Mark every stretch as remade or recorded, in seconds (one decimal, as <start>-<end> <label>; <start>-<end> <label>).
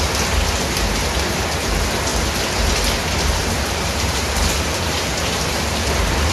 0.0-3.4 recorded; 3.4-6.3 remade